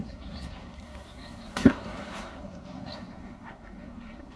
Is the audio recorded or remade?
remade